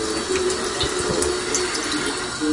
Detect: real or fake real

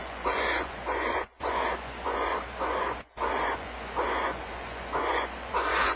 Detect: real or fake fake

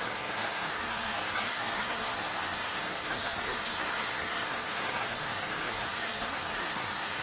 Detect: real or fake fake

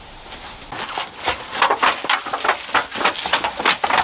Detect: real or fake real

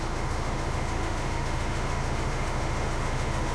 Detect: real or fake fake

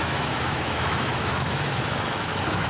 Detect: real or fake fake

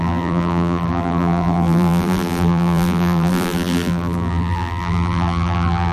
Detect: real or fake fake